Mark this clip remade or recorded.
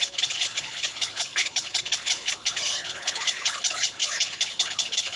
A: remade